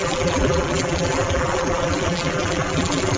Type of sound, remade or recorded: remade